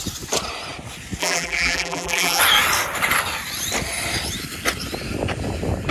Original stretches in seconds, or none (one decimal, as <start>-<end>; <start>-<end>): 0.0-1.2; 2.4-5.9